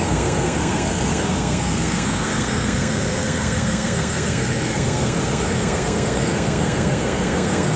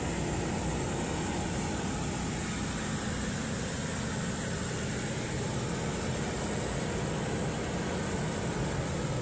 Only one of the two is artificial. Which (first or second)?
first